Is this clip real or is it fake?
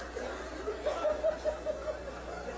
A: real